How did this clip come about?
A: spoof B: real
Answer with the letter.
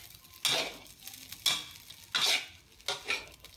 B